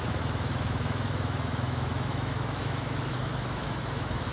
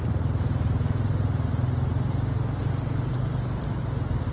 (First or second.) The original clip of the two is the second